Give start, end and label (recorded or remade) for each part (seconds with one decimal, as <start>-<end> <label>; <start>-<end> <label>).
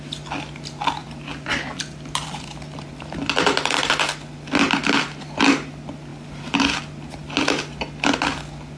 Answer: 0.0-1.0 recorded; 1.0-3.8 remade; 3.8-6.1 recorded; 6.1-6.8 remade; 6.8-8.8 recorded